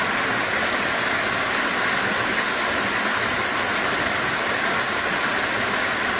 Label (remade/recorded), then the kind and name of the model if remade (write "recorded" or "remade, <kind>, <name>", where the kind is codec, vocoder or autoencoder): recorded